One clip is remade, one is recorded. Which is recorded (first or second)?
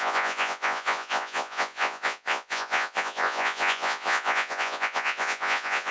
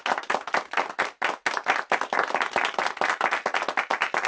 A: second